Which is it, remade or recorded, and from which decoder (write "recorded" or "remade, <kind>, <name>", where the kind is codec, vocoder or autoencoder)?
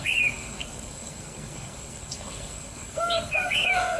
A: remade, codec, SNAC